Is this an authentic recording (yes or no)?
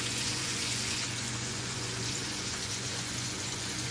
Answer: no